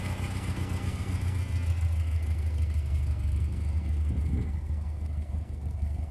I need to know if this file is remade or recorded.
remade